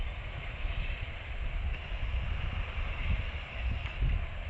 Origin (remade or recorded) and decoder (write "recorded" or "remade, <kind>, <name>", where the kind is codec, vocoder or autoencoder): remade, vocoder, BigVGAN v2